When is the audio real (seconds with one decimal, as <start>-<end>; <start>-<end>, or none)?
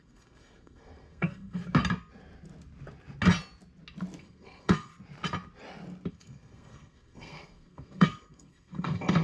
1.6-4.2; 4.9-6.1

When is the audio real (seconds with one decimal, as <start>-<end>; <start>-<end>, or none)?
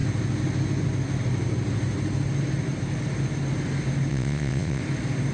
0.0-4.1; 4.8-5.3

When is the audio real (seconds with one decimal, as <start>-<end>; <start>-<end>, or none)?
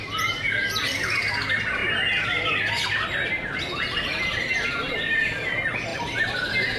0.0-5.9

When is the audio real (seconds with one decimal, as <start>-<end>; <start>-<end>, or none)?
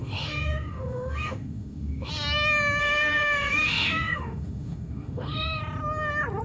2.1-2.8; 5.6-6.4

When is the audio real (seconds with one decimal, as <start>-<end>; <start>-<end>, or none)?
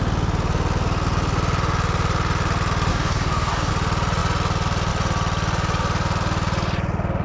0.0-2.9; 3.7-7.2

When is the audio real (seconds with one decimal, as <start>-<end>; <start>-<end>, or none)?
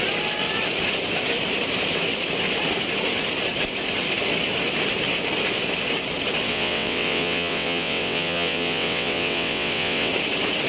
0.0-6.5; 10.1-10.7